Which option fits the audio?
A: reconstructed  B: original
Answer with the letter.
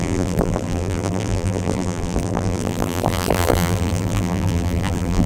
A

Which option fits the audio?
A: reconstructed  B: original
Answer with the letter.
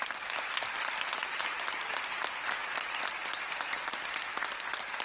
B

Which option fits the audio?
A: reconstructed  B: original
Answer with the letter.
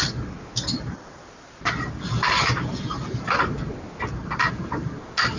B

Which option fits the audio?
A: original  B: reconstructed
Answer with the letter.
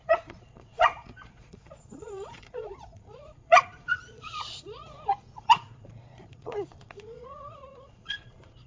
B